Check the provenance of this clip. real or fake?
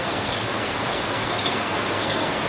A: fake